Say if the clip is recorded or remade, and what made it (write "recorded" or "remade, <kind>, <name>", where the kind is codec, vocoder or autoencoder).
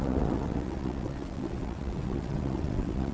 remade, vocoder, WaveNeXt